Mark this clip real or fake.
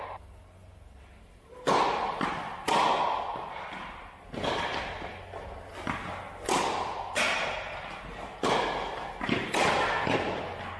real